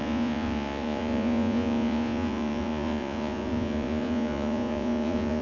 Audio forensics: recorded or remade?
remade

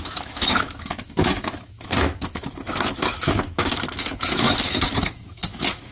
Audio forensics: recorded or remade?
remade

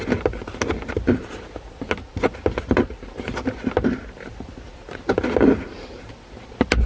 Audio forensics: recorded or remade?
recorded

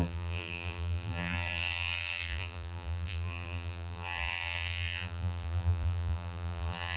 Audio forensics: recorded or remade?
remade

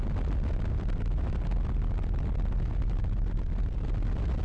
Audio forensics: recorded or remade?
recorded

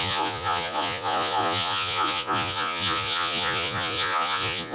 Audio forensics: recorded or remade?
remade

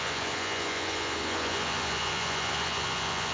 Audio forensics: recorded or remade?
remade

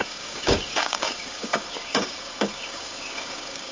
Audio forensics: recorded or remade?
remade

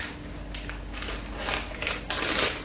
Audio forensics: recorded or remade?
recorded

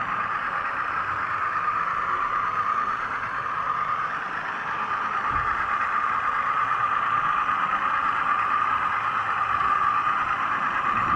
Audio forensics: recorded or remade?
recorded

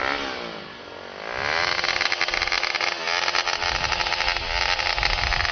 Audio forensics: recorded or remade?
recorded